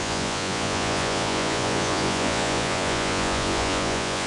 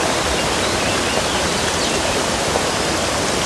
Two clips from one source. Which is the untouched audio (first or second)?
second